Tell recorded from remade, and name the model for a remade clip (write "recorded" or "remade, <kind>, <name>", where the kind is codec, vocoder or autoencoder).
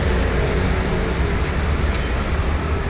recorded